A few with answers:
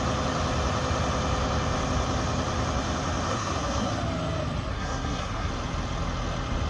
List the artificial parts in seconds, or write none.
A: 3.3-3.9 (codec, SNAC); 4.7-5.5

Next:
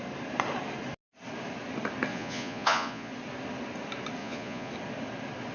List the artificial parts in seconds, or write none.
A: 2.1-3.1 (vocoder, Vocos); 4.2-4.7

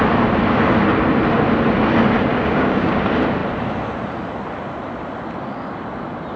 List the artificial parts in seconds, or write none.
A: 2.3-3.0 (codec, DAC)